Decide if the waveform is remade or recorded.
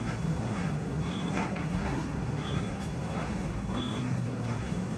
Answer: remade